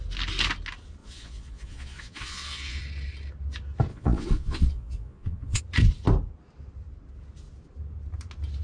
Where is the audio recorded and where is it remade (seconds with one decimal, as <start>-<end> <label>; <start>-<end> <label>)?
0.0-1.0 recorded; 1.0-2.8 remade; 2.8-3.9 recorded; 3.9-5.6 remade; 5.6-8.6 recorded